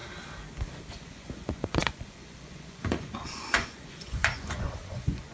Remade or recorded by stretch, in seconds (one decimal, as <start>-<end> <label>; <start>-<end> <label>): 0.0-0.9 recorded; 0.9-5.3 remade